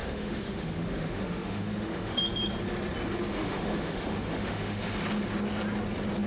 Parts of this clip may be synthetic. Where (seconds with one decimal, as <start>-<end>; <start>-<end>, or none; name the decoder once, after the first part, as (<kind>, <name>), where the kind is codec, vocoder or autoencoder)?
0.0-2.2 (autoencoder, DAC-VAE); 3.3-4.8